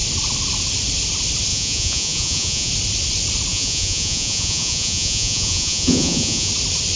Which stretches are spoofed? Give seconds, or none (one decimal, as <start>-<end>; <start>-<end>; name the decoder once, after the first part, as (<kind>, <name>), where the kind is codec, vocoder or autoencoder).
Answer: 1.5-2.7 (vocoder, Vocos); 3.5-6.5